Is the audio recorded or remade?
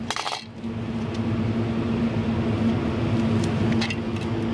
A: recorded